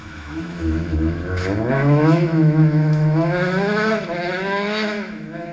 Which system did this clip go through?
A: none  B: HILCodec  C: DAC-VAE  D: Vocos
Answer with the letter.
C